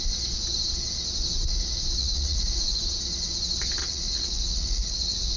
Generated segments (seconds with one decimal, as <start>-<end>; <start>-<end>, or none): 2.0-2.8; 3.8-5.4